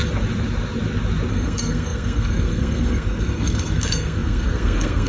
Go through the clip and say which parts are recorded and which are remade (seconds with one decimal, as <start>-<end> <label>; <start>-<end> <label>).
0.0-1.3 recorded; 1.3-5.1 remade